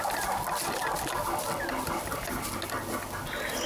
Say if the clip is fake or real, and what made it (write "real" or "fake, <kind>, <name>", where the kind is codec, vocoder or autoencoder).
real